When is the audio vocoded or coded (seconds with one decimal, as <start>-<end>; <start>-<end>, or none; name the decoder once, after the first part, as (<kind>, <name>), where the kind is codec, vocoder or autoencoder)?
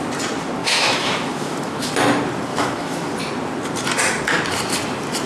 0.6-1.9 (autoencoder, DAC-VAE); 2.5-3.1